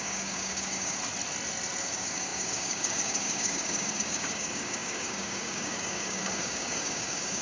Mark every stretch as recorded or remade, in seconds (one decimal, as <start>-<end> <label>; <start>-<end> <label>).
0.0-1.0 remade; 1.0-1.8 recorded; 1.8-7.4 remade